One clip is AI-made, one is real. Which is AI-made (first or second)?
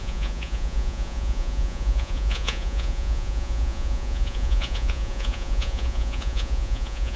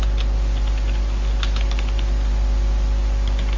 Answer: first